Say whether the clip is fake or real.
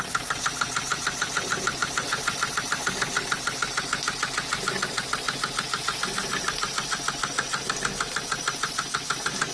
real